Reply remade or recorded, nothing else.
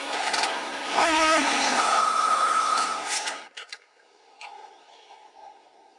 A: remade